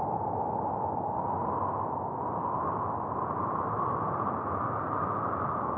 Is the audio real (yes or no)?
yes